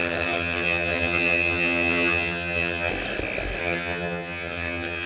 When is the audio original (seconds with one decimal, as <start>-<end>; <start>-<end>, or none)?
2.9-3.6